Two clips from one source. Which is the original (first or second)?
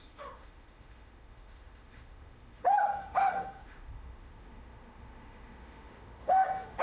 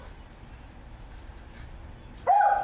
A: second